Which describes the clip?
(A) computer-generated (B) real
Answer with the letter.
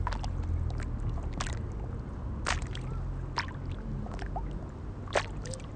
B